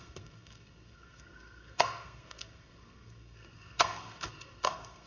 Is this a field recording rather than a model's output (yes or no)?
no